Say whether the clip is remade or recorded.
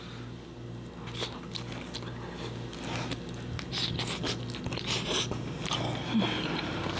recorded